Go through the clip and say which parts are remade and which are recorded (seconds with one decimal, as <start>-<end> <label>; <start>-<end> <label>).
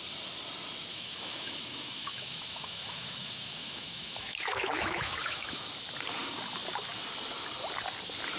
0.0-0.9 recorded; 0.9-5.7 remade; 5.7-8.4 recorded